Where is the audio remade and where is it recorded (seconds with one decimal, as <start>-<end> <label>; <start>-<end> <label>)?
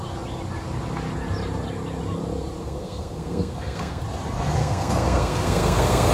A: 0.0-2.6 recorded; 2.6-4.0 remade; 4.0-4.6 recorded; 4.6-6.1 remade